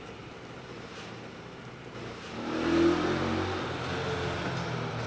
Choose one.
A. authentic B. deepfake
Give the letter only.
A